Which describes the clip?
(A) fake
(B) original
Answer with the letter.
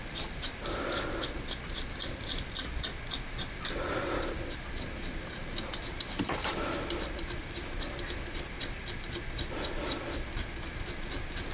B